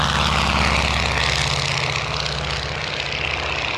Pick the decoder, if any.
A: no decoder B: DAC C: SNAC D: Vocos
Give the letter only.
A